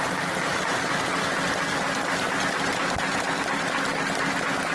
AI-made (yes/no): no